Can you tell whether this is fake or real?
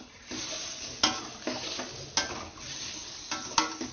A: real